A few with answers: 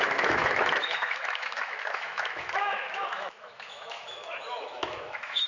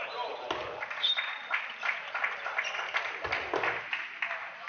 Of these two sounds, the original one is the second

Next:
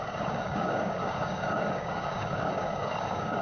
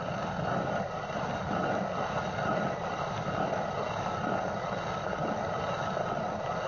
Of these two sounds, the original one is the second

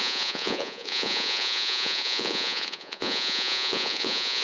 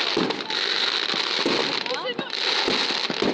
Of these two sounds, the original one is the second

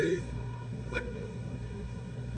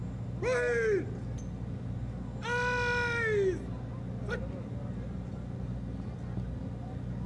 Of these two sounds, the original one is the second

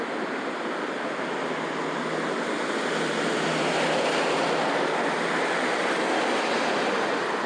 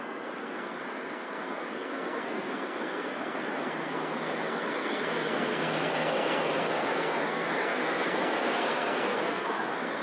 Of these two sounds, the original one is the first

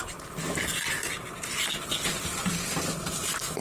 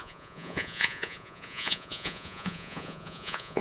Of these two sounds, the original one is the first